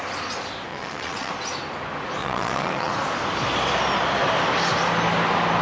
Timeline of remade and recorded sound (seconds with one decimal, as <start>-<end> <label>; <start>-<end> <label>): 0.0-0.7 recorded; 0.7-1.3 remade; 1.3-2.2 recorded; 2.2-2.9 remade; 2.9-5.6 recorded